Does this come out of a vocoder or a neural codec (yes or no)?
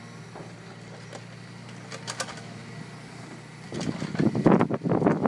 no